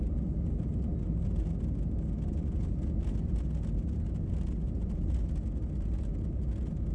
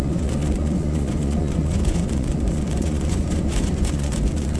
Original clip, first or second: first